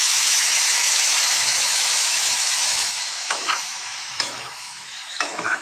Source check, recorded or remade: remade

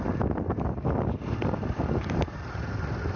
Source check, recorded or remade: recorded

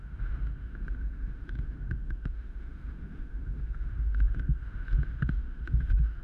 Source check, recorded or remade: remade